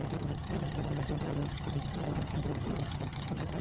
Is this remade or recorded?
remade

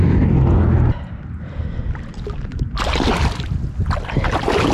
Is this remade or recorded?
recorded